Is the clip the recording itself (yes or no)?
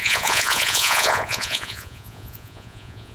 no